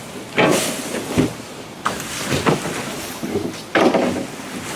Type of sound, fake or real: real